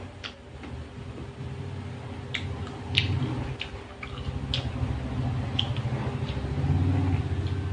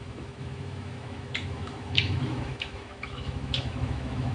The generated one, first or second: second